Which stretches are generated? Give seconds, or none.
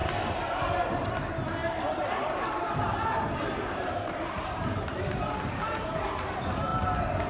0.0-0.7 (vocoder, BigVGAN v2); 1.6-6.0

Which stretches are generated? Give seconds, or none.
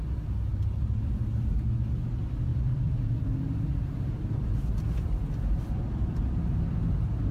2.5-4.5 (vocoder, BigVGAN v2)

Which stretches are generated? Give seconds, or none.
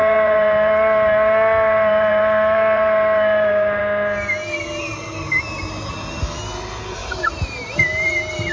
0.0-3.8 (vocoder, BigVGAN v2); 4.9-5.9; 7.0-8.1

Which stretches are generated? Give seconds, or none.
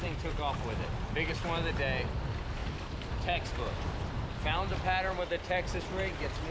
2.6-3.5 (vocoder, BigVGAN v2)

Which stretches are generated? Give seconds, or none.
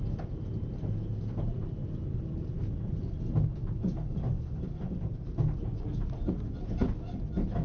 1.8-2.6 (vocoder, BigVGAN v2)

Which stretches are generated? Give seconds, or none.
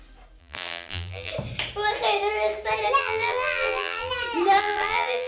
0.4-1.3 (vocoder, BigVGAN v2); 3.0-4.1; 4.6-5.3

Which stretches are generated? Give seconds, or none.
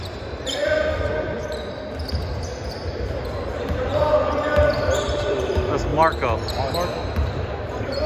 0.0-0.6 (vocoder, BigVGAN v2); 3.5-4.0; 4.7-5.9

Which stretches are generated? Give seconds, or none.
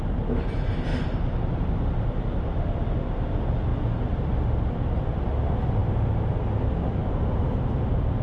0.9-1.8 (vocoder, BigVGAN v2); 3.7-5.0